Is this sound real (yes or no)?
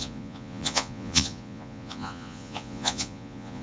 no